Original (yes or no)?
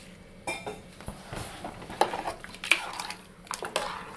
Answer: yes